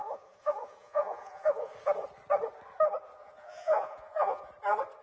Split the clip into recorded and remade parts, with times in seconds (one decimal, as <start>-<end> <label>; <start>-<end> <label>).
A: 0.0-1.7 remade; 1.7-3.2 recorded; 3.2-4.5 remade; 4.5-5.0 recorded